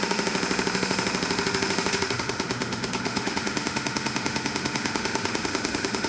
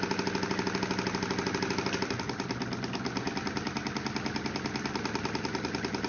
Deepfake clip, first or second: first